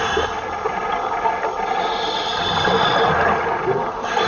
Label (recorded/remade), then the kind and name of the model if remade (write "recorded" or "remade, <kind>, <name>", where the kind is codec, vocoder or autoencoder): recorded